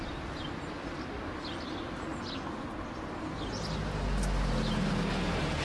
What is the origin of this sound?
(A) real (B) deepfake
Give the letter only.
A